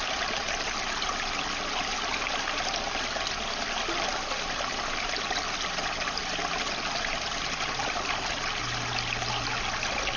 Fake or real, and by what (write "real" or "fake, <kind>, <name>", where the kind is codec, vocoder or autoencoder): real